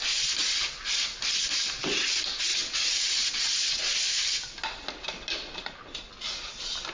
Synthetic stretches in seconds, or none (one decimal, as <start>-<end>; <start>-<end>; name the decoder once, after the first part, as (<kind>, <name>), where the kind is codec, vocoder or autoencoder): 2.5-3.8 (vocoder, WaveNeXt)

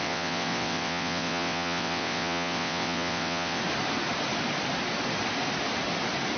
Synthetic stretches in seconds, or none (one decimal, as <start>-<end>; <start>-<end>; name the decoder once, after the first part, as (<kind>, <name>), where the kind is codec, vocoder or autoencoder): 0.0-3.6 (vocoder, WaveNeXt)

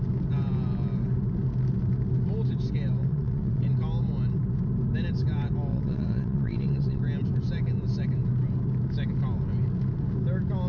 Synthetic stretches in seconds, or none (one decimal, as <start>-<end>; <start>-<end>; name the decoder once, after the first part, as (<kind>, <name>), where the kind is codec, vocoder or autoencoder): 3.0-3.6 (vocoder, WaveNeXt); 5.7-7.0

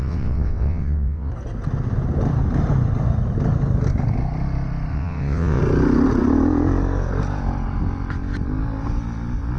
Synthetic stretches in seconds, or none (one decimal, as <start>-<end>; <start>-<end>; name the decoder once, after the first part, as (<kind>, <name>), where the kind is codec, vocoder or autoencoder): 0.0-1.3 (vocoder, WaveNeXt); 4.9-5.6